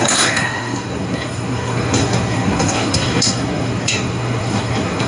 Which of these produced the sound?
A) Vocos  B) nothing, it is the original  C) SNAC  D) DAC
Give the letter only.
C